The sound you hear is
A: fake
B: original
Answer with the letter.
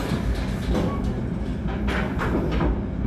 B